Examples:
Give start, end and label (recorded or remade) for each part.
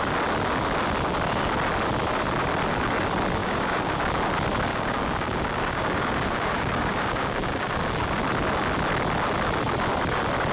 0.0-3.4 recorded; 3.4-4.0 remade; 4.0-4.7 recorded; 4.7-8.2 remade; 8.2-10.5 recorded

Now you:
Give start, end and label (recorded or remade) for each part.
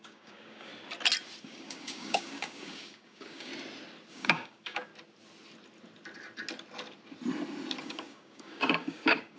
0.0-0.7 remade; 0.7-1.4 recorded; 1.4-3.5 remade; 3.5-4.1 recorded; 4.1-4.9 remade; 4.9-7.8 recorded; 7.8-9.4 remade